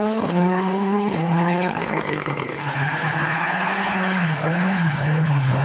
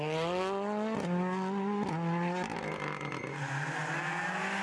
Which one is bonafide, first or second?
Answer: second